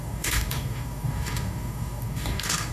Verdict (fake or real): fake